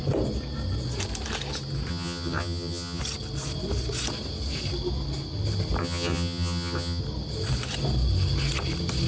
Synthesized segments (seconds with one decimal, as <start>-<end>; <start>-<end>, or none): 1.9-3.0; 5.8-7.0